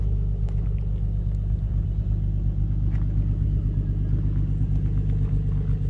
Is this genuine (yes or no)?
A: yes